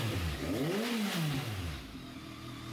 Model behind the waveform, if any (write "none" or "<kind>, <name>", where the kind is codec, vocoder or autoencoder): none